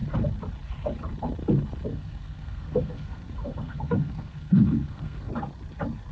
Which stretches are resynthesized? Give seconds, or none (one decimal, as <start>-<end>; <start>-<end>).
1.9-5.3